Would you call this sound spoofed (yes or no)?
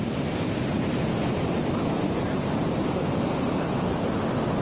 no